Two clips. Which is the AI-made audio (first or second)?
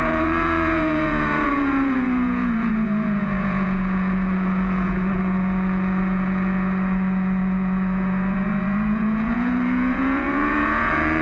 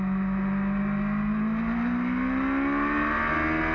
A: first